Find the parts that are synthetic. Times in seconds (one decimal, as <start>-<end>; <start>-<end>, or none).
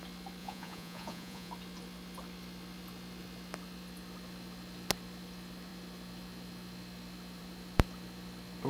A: 0.4-1.5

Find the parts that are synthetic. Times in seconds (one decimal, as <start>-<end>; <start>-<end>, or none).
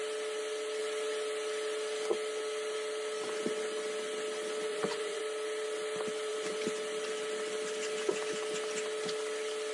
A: 4.7-5.2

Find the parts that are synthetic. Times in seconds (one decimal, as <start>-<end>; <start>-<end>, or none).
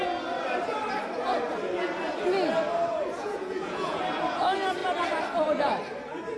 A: 3.2-4.0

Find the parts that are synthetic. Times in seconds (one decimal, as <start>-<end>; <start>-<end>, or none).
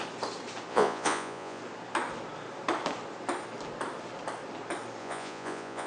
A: 0.7-1.6; 5.0-5.9